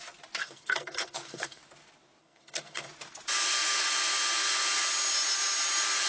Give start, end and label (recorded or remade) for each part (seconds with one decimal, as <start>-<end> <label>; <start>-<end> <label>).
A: 0.0-0.4 recorded; 0.4-1.6 remade; 1.6-2.2 recorded; 2.2-2.9 remade; 2.9-6.1 recorded